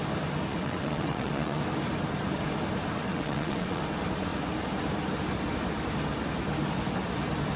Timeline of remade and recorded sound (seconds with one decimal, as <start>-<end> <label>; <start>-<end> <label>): 0.0-0.5 recorded; 0.5-1.6 remade; 1.6-3.1 recorded; 3.1-3.8 remade; 3.8-7.6 recorded